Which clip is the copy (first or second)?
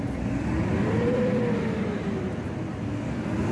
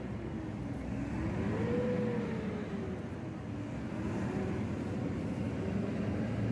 first